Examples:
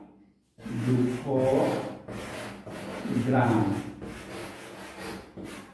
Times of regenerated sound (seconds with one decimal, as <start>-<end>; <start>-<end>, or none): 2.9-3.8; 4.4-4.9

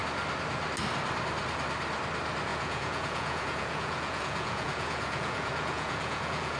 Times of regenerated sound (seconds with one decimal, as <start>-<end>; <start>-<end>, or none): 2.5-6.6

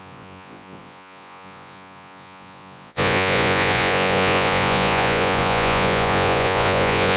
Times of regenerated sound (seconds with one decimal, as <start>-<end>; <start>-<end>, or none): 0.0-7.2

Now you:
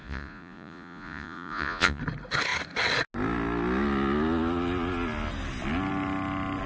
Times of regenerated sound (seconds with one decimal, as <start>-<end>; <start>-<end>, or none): 0.0-2.0